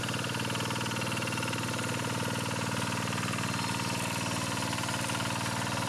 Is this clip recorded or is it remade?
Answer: recorded